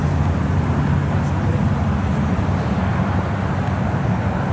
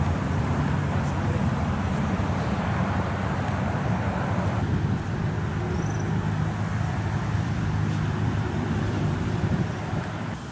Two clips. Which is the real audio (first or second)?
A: first